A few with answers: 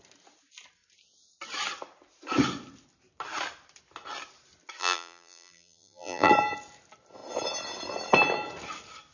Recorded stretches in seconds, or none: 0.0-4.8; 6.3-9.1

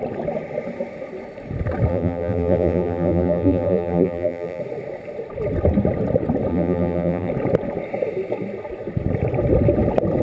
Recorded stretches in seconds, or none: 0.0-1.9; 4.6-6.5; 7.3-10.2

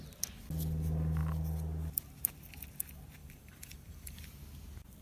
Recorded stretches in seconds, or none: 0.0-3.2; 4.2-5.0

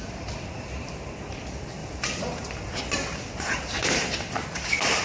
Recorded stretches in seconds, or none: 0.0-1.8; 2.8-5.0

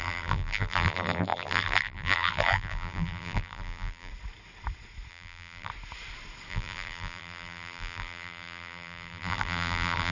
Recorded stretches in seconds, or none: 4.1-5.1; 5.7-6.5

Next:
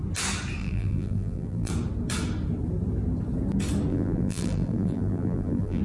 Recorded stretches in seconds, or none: 0.0-0.6; 1.7-3.9

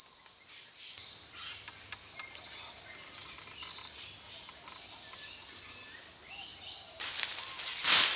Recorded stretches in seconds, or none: 0.0-6.5; 7.1-8.2